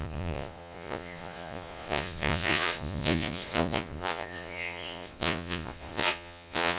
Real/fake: fake